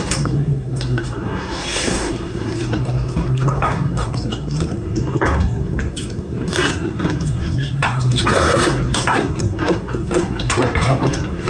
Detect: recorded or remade remade